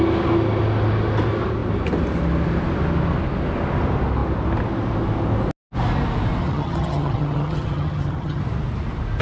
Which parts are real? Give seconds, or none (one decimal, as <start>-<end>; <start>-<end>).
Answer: 0.0-6.4; 8.4-9.2